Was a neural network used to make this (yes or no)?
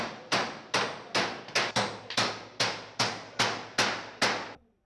no